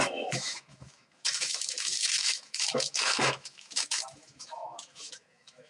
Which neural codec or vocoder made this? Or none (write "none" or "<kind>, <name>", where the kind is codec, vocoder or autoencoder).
autoencoder, DAC-VAE